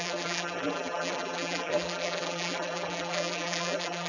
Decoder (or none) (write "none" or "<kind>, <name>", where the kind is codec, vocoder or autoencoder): vocoder, BigVGAN v2